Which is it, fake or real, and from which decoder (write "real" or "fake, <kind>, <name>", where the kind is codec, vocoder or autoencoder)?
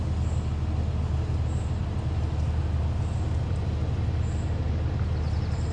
real